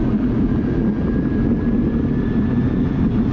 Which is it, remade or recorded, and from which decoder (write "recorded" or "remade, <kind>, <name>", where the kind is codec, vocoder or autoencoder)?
remade, vocoder, BigVGAN v2